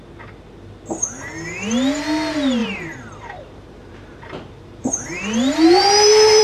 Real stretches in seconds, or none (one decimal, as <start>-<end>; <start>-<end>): 0.0-2.6